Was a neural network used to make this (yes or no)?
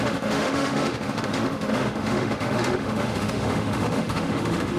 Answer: yes